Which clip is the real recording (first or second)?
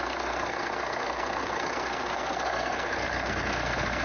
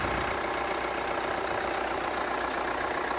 second